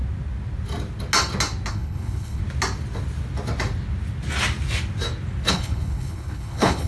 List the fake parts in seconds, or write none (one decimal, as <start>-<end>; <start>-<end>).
1.7-2.4; 5.5-6.9